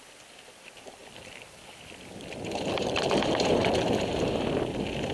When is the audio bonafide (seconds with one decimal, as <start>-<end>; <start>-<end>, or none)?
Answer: 0.0-5.1